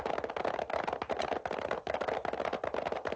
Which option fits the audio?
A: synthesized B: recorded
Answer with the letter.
B